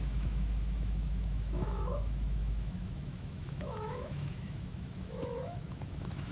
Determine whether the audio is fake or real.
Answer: fake